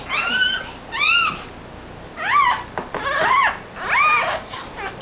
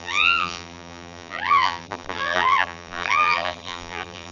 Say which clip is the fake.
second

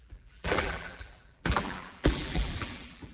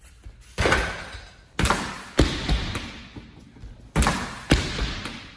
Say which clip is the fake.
first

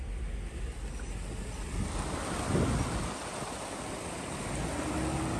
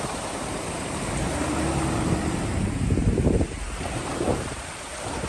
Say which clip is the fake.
second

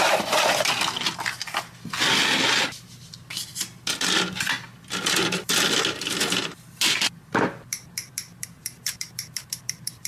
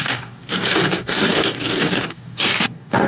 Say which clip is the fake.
second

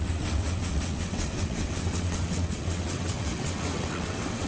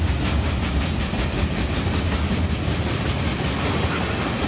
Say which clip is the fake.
first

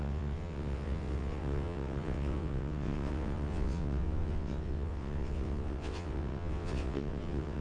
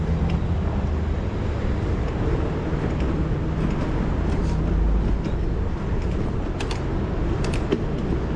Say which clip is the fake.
first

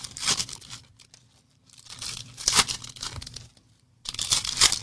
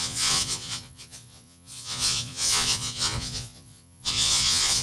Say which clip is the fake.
second